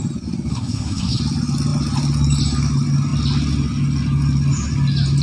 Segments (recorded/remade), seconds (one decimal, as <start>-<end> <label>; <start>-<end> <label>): 0.0-0.5 recorded; 0.5-1.2 remade; 1.2-5.2 recorded